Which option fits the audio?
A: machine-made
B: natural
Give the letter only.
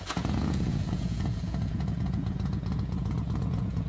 A